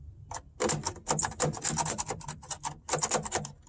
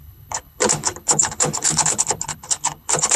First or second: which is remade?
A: second